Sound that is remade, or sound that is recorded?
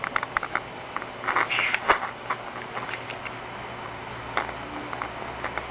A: recorded